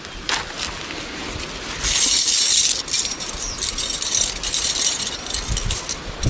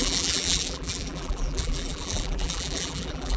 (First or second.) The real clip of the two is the first